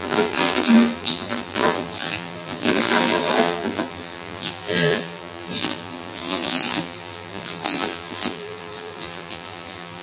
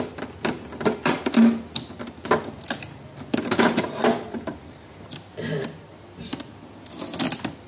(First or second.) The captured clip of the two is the second